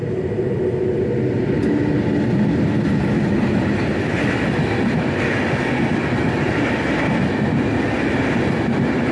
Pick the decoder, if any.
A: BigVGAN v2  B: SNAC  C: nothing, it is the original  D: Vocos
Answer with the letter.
C